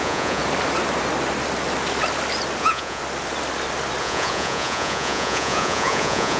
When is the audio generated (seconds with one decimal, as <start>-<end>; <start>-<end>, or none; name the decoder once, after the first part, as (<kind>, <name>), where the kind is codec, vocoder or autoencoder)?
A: 0.0-0.4 (vocoder, Vocos); 2.6-3.0; 4.0-6.4

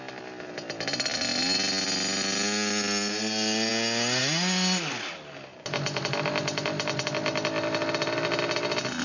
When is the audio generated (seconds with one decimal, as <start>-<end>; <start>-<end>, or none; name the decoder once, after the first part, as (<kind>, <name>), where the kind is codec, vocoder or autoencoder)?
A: none

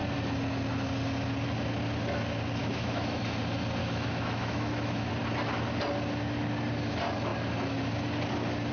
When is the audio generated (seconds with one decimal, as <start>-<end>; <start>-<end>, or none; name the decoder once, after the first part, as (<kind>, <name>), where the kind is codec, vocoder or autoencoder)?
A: 2.6-3.2 (autoencoder, DAC-VAE); 3.8-5.1

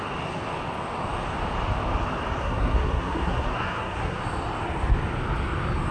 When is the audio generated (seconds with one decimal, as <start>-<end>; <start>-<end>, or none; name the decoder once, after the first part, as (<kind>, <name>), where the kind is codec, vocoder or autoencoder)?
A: 2.4-4.2 (codec, SNAC)

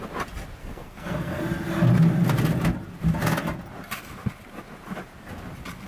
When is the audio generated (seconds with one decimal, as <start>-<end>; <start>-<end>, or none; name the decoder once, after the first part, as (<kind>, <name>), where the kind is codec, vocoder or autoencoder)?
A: 0.6-1.4 (codec, SNAC)